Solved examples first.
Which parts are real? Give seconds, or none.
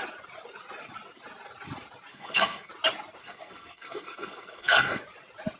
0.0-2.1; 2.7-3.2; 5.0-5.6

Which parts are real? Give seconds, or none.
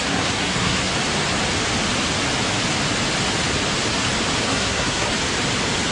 0.9-4.4; 5.1-5.9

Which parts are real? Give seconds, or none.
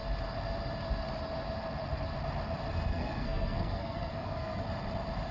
0.0-2.9; 4.6-5.3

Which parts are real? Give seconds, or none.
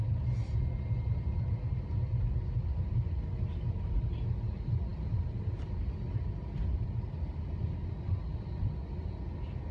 0.0-9.7